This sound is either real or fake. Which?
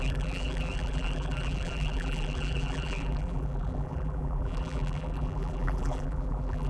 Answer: fake